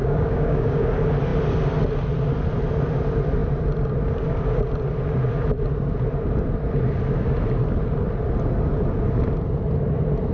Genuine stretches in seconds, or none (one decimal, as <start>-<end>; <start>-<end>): 0.9-10.3